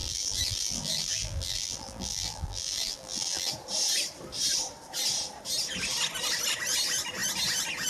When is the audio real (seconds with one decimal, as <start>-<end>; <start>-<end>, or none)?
3.5-7.9